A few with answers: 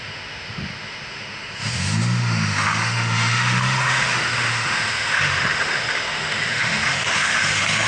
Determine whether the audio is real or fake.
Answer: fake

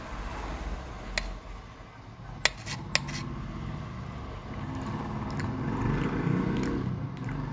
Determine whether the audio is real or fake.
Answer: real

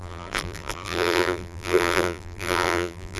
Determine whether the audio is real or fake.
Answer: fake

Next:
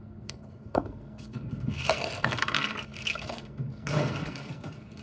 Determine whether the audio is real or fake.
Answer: fake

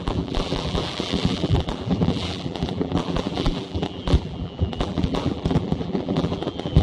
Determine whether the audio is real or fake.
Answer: fake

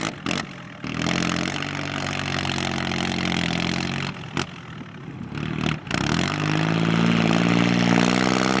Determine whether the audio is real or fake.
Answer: real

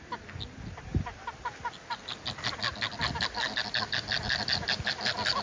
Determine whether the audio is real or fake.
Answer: real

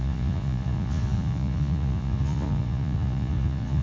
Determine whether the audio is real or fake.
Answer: fake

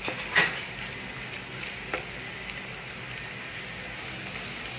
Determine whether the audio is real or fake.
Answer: real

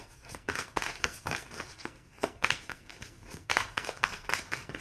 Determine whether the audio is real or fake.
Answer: fake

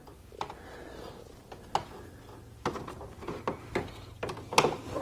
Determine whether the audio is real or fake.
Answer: real